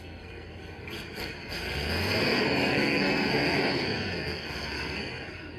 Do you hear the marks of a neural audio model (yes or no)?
yes